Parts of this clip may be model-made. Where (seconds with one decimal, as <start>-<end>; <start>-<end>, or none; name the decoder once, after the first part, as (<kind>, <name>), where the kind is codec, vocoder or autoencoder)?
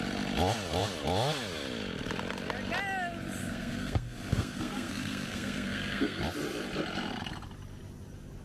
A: 3.4-6.2 (codec, SNAC)